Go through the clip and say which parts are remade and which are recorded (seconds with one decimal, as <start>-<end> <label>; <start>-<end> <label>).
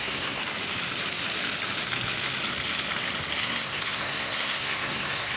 0.0-0.4 remade; 0.4-3.4 recorded; 3.4-5.4 remade